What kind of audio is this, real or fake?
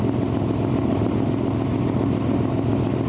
real